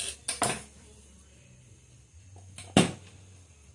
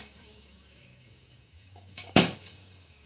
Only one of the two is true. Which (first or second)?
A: first